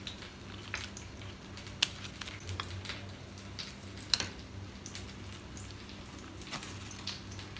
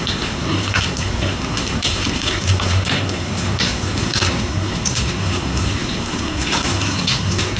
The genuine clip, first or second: first